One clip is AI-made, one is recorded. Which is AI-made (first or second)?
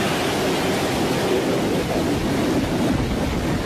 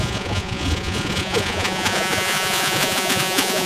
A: second